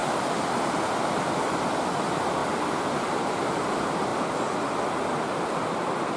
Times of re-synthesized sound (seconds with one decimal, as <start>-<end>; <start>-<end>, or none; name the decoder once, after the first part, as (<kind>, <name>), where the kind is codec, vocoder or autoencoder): 1.2-2.4 (vocoder, BigVGAN v2); 3.1-6.2